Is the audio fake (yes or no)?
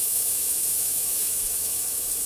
yes